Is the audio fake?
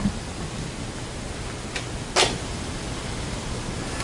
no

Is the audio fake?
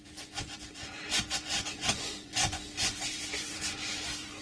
yes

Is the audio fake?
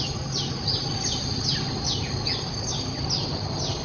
no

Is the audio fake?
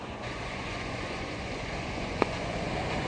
yes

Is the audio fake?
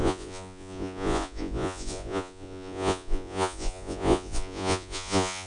yes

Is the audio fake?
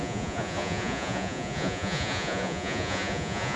yes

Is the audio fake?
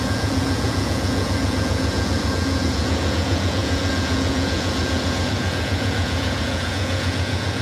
yes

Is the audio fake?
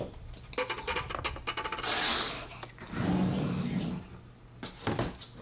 no